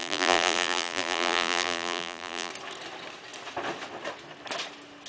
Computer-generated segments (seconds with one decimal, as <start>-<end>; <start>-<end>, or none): 0.0-2.5